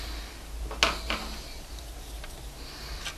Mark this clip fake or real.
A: real